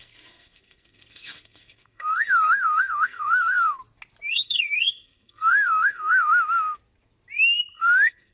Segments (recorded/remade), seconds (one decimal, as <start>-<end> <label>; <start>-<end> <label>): 0.0-3.8 remade; 3.8-4.3 recorded; 4.3-6.3 remade; 6.3-7.7 recorded; 7.7-8.3 remade